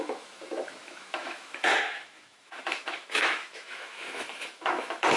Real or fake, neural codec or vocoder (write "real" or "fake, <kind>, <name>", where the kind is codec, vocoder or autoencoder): fake, autoencoder, DAC-VAE